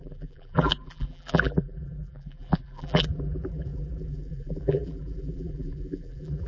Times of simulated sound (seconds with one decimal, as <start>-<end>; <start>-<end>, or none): 0.0-6.5